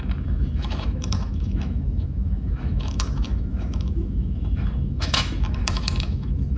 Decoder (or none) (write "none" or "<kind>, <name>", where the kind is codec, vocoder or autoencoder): autoencoder, DAC-VAE